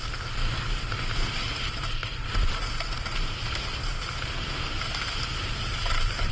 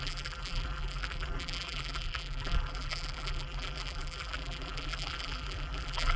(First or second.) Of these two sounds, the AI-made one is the second